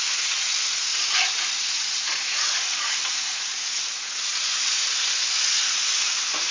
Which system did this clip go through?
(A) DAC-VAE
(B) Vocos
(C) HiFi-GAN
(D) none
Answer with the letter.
B